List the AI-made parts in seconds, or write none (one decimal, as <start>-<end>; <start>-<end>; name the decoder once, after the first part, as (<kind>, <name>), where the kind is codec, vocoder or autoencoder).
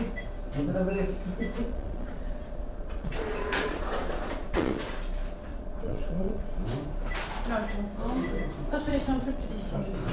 1.6-5.0 (vocoder, Vocos); 5.5-6.6; 8.9-9.5